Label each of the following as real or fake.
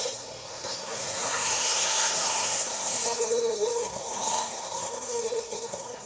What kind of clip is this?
fake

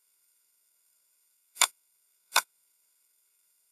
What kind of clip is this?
fake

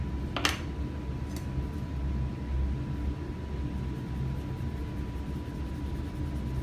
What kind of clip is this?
real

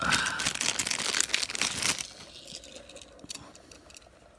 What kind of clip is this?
real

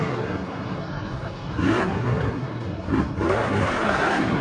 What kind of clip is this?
fake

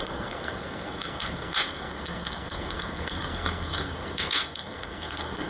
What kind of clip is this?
fake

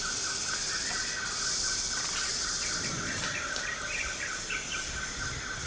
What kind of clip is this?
real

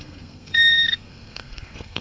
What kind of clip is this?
fake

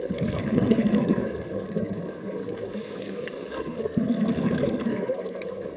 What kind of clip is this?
fake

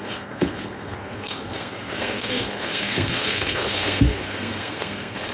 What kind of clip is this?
fake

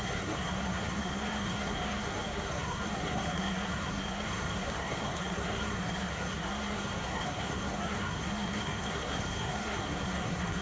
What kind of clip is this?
fake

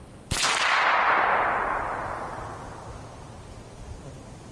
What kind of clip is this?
real